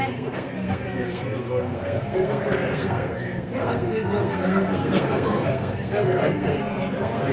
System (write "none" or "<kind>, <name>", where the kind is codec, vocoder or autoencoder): codec, SNAC